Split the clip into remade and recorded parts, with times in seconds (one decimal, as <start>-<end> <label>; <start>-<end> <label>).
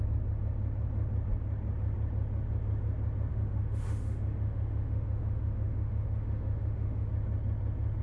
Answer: 0.0-3.3 recorded; 3.3-7.1 remade; 7.1-8.0 recorded